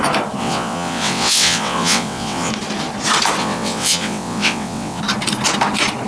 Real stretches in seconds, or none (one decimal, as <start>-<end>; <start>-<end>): 0.0-0.4; 2.5-3.4; 5.0-6.1